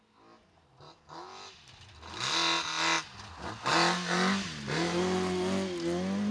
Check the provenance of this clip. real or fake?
real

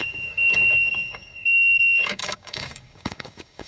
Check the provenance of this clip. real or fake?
fake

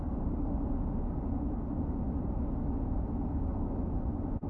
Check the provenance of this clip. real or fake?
real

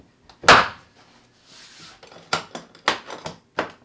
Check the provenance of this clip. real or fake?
real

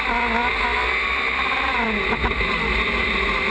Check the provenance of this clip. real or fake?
real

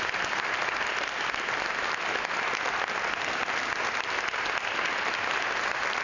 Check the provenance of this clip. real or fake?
real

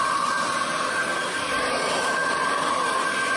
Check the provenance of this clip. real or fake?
fake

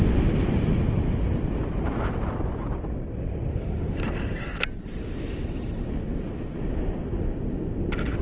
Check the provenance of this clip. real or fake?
real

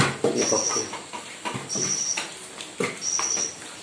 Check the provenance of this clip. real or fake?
real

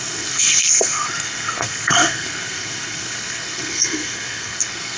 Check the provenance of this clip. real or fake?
fake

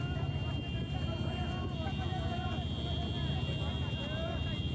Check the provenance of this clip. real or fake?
real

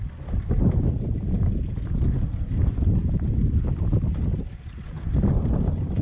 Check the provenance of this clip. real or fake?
real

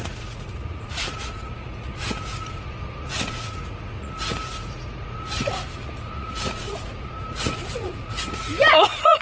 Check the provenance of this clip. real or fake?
fake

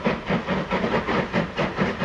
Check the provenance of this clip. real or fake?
real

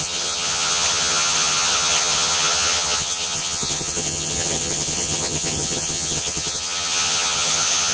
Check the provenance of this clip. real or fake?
fake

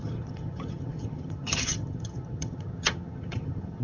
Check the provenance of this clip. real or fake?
fake